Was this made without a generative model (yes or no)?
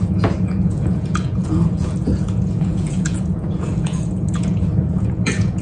no